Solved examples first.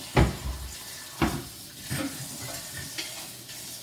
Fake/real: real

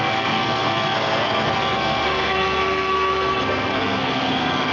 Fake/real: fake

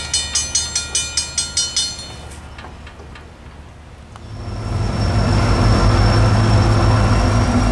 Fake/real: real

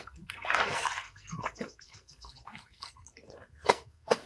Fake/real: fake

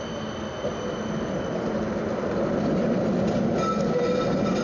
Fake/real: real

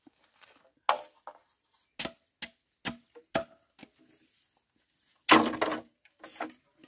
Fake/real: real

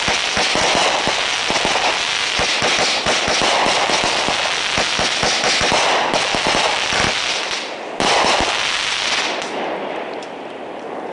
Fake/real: real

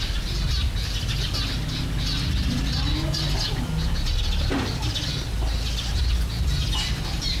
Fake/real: real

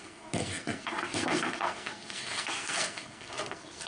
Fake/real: fake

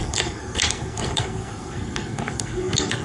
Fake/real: fake